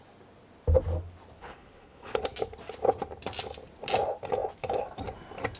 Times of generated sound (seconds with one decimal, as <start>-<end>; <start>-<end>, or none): 1.4-2.2